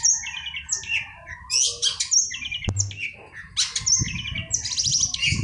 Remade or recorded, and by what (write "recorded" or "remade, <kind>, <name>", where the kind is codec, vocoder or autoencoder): recorded